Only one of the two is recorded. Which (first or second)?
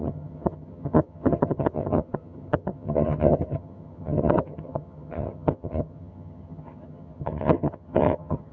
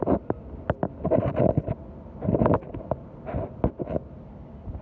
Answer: second